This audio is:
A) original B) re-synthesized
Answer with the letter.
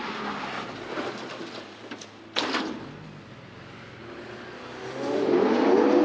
A